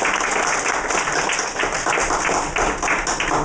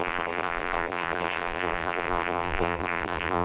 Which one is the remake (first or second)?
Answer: second